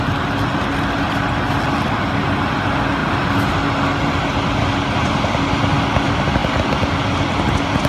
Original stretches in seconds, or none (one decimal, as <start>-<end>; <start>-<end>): 0.0-7.9